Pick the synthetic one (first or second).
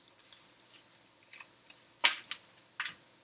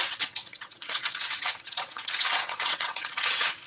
second